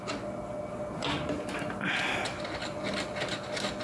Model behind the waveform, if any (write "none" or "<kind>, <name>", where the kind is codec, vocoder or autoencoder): none